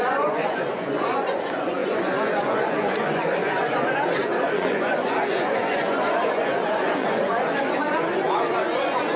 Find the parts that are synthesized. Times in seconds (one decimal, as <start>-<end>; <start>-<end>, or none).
0.0-9.2